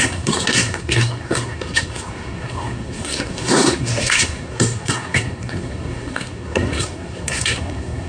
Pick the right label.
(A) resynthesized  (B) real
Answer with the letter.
A